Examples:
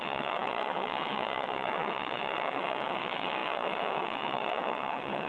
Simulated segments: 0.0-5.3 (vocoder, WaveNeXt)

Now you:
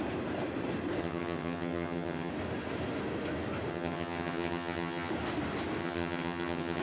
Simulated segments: 1.0-2.3 (vocoder, HiFi-GAN); 3.7-5.1; 5.8-6.8

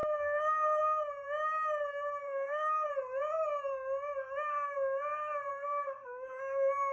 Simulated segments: 0.0-0.8 (codec, SNAC); 2.2-2.9; 5.5-6.4

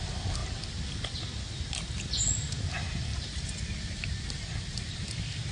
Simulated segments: none

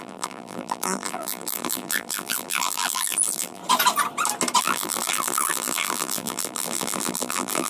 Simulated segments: 0.0-3.6 (vocoder, BigVGAN v2); 4.6-7.7

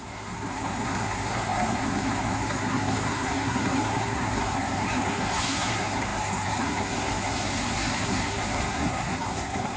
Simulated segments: 0.0-9.8 (codec, SNAC)

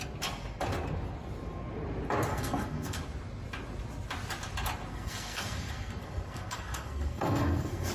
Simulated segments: 2.3-3.0 (codec, SNAC); 4.9-7.9

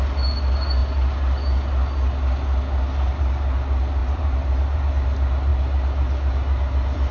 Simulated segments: 4.0-4.9 (vocoder, BigVGAN v2)